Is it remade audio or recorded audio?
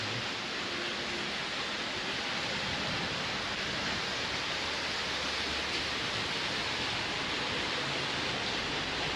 recorded